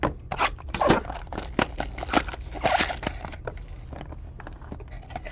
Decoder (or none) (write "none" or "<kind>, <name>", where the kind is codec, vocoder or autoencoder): none